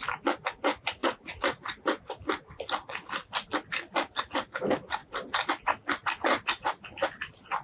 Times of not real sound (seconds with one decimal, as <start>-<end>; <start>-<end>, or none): 1.0-2.1; 6.0-6.8

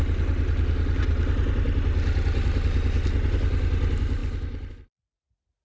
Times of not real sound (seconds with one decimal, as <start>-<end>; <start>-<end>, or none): none